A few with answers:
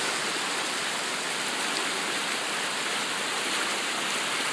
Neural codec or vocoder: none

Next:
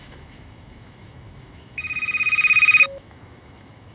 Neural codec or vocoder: autoencoder, DAC-VAE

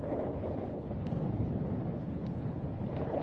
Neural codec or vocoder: codec, HILCodec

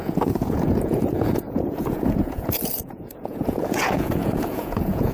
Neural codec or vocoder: vocoder, Vocos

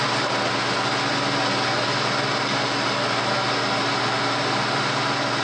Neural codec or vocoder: none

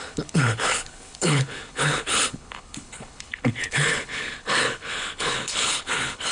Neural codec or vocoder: codec, HILCodec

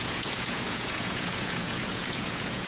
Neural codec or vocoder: vocoder, Vocos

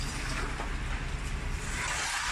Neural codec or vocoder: vocoder, BigVGAN v2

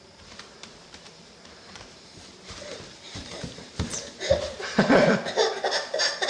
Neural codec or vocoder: vocoder, BigVGAN v2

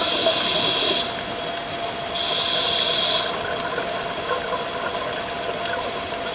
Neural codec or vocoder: none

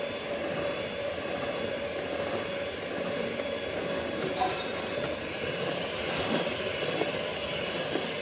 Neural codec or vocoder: none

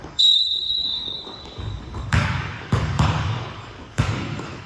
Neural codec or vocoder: codec, DAC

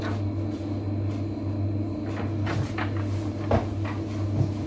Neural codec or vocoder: none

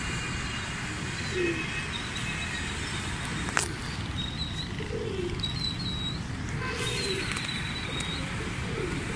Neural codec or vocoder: none